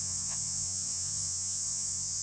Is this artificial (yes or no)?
yes